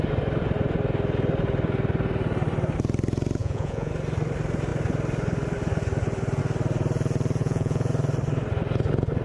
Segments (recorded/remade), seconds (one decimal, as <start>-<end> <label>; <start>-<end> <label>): 0.0-3.4 recorded; 3.4-3.9 remade; 3.9-7.4 recorded; 7.4-7.9 remade; 7.9-9.2 recorded